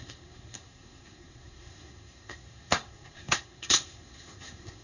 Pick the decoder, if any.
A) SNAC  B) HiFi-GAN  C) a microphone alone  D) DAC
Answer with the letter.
A